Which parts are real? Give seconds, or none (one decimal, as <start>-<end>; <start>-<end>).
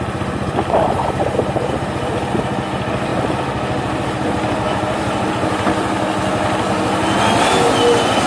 0.0-3.1; 5.3-8.3